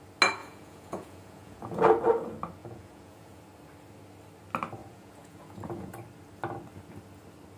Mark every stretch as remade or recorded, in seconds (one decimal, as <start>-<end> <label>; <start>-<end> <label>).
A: 0.0-0.4 recorded; 0.4-1.8 remade; 1.8-2.6 recorded; 2.6-3.4 remade; 3.4-4.8 recorded; 4.8-5.9 remade; 5.9-7.6 recorded